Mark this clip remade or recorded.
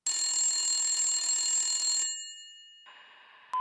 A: recorded